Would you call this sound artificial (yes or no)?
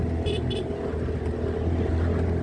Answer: no